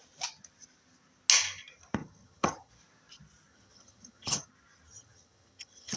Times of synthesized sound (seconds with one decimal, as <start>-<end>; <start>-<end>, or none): 2.0-2.7; 3.5-4.5; 4.9-6.0

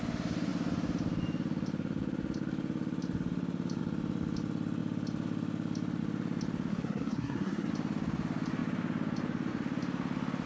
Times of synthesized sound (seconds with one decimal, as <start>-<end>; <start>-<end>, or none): 6.7-7.7

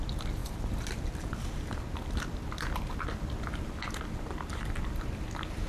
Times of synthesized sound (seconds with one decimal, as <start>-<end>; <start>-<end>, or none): none

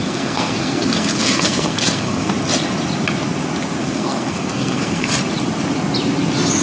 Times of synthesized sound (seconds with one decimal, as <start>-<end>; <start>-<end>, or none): 0.0-2.3; 3.8-5.1

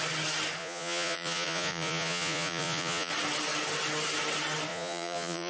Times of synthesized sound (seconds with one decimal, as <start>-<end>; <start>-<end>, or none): 0.6-3.1; 4.7-5.5

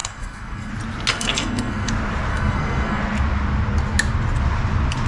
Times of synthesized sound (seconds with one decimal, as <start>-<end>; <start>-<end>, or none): 0.0-0.7; 1.1-1.9; 2.3-3.0